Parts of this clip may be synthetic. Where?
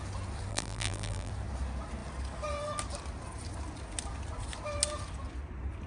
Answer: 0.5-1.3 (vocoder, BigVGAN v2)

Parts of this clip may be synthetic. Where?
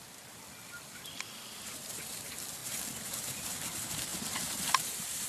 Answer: none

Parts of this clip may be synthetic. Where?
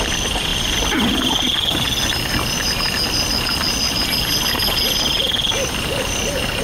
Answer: none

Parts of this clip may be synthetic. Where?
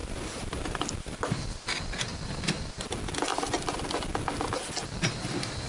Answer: 0.0-1.4 (vocoder, BigVGAN v2); 2.1-2.7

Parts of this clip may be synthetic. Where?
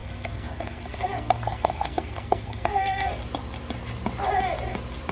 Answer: 0.0-3.1 (codec, SNAC)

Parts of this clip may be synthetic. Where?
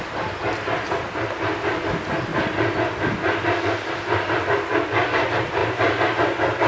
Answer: none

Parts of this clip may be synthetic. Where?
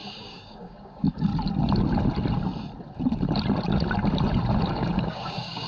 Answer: 0.0-1.3 (codec, DAC); 4.7-5.7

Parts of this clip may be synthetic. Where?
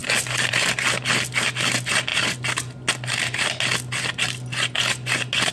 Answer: none